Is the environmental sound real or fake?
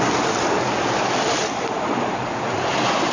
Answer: real